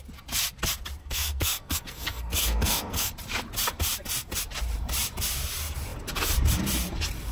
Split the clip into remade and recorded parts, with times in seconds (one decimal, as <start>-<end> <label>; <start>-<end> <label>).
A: 0.0-1.0 recorded; 1.0-3.1 remade; 3.1-7.3 recorded